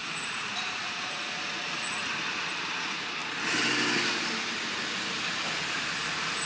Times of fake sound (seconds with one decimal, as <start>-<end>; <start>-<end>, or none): 0.0-2.1